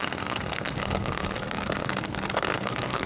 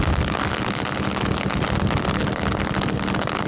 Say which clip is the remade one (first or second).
first